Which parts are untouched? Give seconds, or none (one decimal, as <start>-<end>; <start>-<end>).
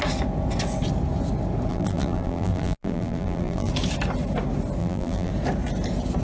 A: 0.0-1.7; 3.7-4.8; 5.3-6.2